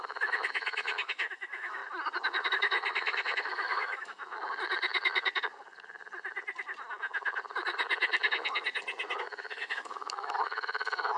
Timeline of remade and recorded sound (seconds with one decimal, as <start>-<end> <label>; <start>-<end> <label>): 0.0-1.8 remade; 1.8-2.5 recorded; 2.5-4.2 remade; 4.2-9.2 recorded; 9.2-11.2 remade